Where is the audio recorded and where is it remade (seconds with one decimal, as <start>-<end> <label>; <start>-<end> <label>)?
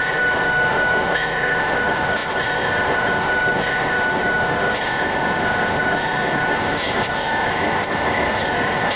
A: 0.0-9.0 remade